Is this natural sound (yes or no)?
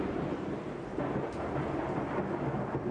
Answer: yes